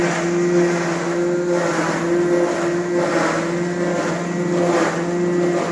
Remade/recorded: recorded